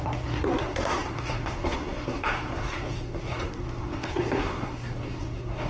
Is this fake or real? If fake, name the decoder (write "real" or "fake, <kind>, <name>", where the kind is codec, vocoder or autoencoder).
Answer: fake, codec, SNAC